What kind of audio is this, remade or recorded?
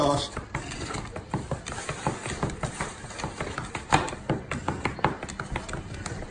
recorded